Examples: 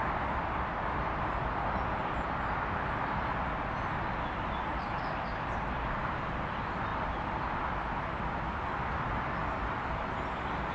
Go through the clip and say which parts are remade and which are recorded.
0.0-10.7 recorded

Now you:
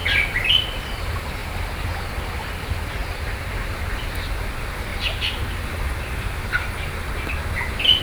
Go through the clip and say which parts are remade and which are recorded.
0.0-3.0 recorded; 3.0-3.7 remade; 3.7-4.9 recorded; 4.9-5.5 remade; 5.5-8.0 recorded

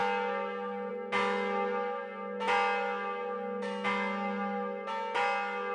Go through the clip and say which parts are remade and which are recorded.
0.0-5.7 recorded

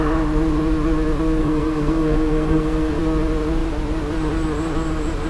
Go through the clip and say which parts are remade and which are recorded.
0.0-1.4 recorded; 1.4-3.0 remade; 3.0-5.3 recorded

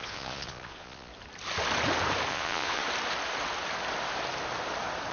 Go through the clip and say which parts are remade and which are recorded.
0.0-1.1 remade; 1.1-2.3 recorded; 2.3-2.8 remade; 2.8-5.1 recorded

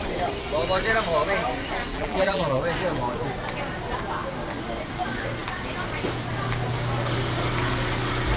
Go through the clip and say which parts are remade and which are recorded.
0.0-1.9 recorded; 1.9-2.6 remade; 2.6-8.4 recorded